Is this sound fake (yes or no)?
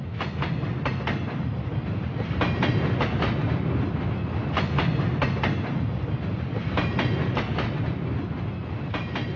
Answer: no